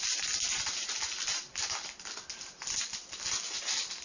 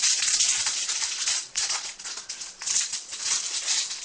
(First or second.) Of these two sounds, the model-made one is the second